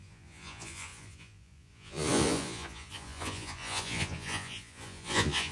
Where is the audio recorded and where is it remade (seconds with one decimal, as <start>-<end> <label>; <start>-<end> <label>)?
0.0-5.5 remade